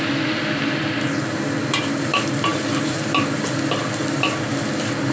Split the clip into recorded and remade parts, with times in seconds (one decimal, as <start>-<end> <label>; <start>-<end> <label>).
0.0-5.1 recorded